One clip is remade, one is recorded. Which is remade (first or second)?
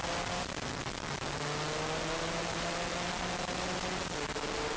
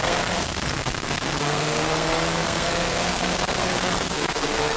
second